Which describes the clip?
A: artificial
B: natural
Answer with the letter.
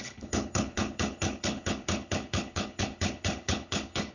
A